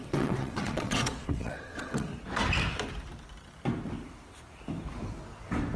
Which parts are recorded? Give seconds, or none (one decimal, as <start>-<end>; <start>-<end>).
2.1-5.8